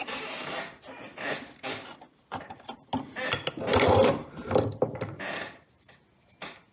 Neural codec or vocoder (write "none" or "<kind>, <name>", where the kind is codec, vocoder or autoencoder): none